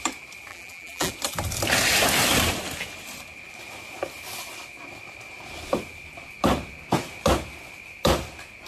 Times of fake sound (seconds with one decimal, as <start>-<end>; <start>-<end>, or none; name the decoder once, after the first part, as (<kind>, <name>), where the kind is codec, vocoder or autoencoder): 0.5-1.1 (vocoder, BigVGAN v2)